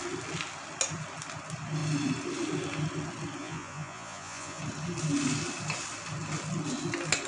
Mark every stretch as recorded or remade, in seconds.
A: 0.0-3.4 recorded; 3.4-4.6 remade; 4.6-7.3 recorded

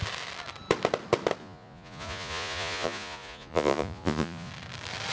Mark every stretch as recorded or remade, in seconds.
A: 0.0-1.4 recorded; 1.4-4.5 remade; 4.5-5.1 recorded